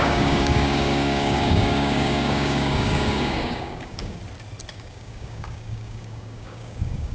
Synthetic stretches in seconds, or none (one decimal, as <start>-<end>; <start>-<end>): 0.0-4.2; 4.7-7.1